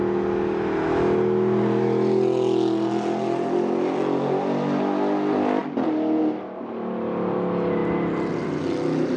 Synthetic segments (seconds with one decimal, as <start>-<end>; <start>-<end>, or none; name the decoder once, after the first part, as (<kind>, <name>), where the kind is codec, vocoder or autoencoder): none